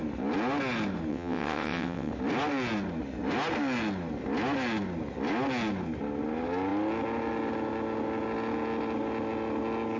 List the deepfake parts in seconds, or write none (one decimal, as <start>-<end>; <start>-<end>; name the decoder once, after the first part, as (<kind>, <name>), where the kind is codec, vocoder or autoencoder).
1.1-2.1 (vocoder, WaveNeXt)